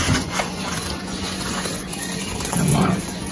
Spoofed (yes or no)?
yes